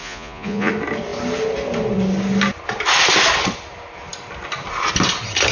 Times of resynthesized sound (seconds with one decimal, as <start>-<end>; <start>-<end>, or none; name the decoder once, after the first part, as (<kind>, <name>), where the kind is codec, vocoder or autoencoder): 0.0-0.7 (vocoder, Vocos)